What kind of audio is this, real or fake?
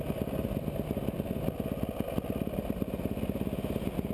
real